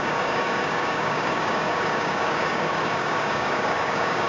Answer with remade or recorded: remade